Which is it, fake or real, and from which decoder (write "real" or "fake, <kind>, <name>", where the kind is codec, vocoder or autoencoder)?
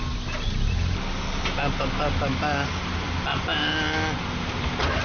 real